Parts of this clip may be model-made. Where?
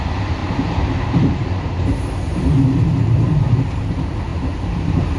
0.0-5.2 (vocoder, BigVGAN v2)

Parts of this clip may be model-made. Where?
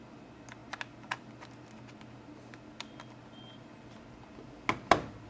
none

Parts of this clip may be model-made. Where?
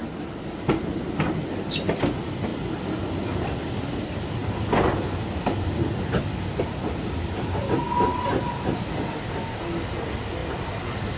none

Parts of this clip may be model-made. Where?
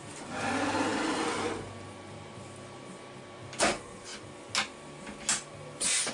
none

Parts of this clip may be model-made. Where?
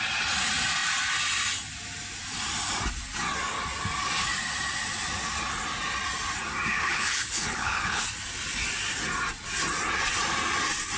6.7-8.0 (codec, HILCodec)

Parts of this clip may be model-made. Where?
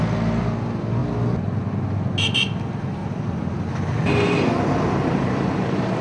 none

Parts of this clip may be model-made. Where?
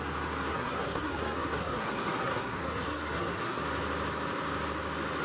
0.5-3.6 (codec, SNAC)